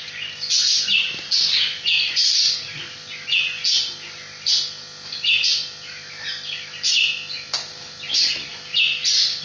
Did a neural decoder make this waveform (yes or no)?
no